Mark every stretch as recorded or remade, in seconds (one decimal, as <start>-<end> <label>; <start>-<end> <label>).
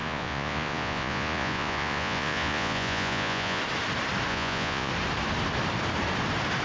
0.0-3.6 remade; 3.6-4.3 recorded; 4.3-4.9 remade; 4.9-6.6 recorded